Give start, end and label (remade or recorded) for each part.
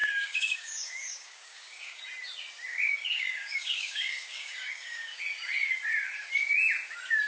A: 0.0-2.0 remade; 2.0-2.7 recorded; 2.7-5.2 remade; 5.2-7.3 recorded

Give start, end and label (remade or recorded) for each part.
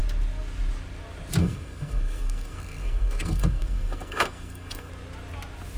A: 0.0-1.4 recorded; 1.4-4.9 remade; 4.9-5.8 recorded